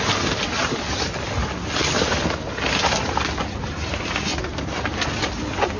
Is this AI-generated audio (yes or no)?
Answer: no